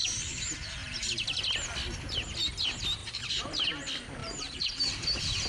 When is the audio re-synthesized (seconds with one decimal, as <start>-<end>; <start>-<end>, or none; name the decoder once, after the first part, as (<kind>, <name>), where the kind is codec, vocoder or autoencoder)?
0.8-1.4 (vocoder, BigVGAN v2); 3.0-3.7; 4.2-4.7